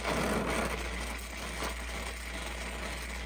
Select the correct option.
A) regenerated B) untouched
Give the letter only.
B